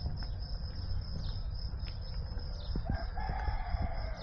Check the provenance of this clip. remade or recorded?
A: recorded